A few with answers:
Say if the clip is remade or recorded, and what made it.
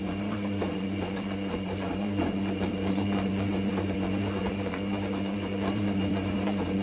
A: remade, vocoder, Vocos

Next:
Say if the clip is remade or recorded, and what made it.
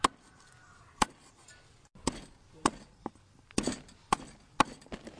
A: recorded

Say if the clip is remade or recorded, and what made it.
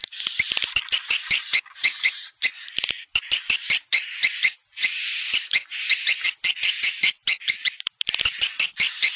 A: recorded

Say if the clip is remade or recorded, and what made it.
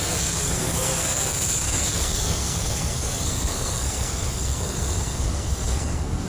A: remade, codec, SNAC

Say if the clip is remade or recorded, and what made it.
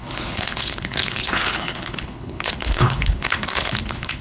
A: remade, codec, HILCodec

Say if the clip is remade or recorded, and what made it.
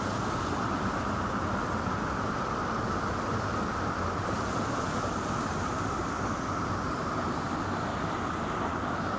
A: recorded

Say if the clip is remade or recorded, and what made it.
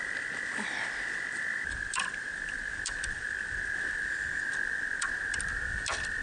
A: remade, vocoder, BigVGAN v2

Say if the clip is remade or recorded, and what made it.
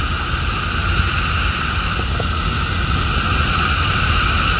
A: recorded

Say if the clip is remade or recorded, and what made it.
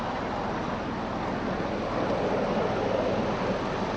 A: recorded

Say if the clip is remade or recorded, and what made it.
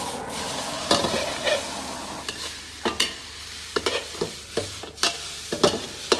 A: recorded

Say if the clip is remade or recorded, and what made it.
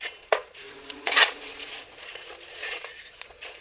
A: remade, vocoder, Vocos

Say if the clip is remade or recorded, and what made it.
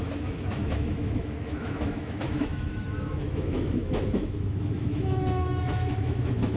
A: remade, autoencoder, DAC-VAE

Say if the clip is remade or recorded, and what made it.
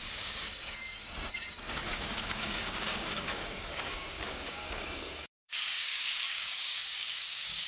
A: remade, codec, DAC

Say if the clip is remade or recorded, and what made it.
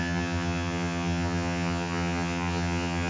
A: remade, vocoder, HiFi-GAN